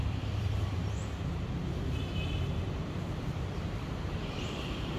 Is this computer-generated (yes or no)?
yes